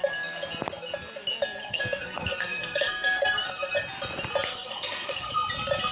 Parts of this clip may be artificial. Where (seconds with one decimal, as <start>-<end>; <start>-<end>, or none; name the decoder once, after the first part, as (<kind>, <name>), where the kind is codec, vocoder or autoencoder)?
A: 1.6-3.7 (codec, SNAC); 4.5-5.3